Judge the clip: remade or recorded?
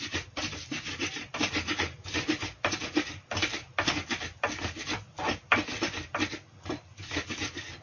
recorded